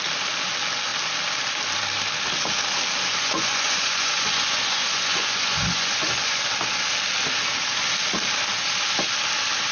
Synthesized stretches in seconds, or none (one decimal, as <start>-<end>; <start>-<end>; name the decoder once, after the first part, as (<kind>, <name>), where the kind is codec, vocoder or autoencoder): 3.1-6.4 (vocoder, Vocos)